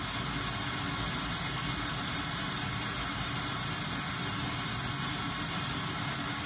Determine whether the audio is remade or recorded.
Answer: recorded